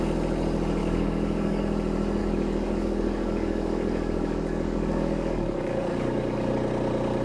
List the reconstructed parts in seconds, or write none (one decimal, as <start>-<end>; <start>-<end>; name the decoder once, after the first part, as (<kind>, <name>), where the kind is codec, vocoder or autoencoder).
0.8-1.6 (codec, DAC); 2.2-6.5